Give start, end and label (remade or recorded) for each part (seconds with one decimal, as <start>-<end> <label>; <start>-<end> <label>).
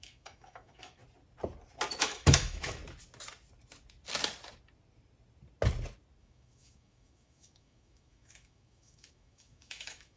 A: 0.0-1.0 remade; 1.0-2.0 recorded; 2.0-2.8 remade; 2.8-6.2 recorded; 6.2-10.2 remade